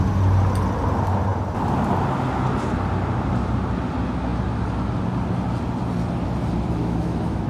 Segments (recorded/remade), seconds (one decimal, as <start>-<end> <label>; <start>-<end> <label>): 0.0-6.8 recorded; 6.8-7.5 remade